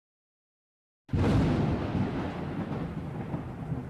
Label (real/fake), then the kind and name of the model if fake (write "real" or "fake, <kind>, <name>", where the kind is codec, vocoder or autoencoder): real